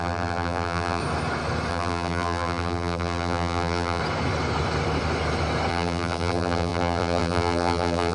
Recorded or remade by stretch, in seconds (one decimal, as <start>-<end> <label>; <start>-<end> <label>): 0.0-1.0 remade; 1.0-1.7 recorded; 1.7-4.0 remade; 4.0-5.7 recorded; 5.7-8.1 remade